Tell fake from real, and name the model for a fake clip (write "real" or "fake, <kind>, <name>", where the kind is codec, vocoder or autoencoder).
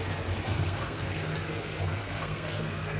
fake, codec, SNAC